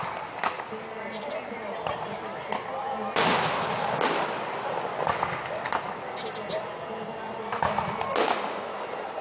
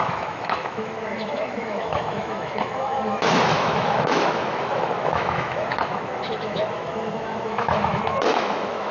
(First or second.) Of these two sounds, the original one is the first